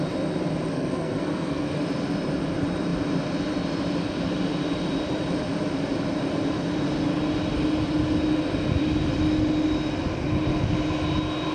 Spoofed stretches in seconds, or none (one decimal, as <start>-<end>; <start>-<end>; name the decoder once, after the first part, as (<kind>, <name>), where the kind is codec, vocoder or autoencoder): 0.7-1.8 (codec, SNAC)